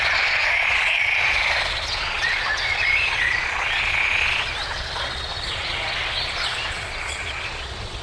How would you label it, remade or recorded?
remade